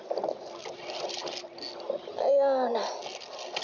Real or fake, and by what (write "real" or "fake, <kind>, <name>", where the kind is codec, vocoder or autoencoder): real